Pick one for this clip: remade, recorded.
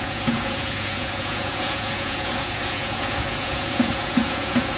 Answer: remade